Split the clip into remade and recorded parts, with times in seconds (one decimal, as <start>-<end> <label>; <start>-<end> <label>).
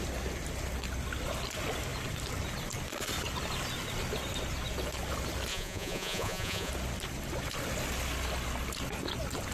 0.0-5.5 recorded; 5.5-6.7 remade; 6.7-9.5 recorded